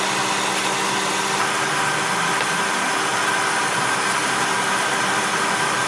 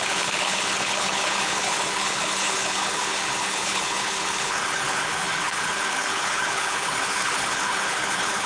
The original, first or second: first